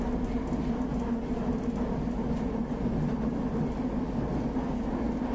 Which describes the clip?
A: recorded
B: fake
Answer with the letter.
A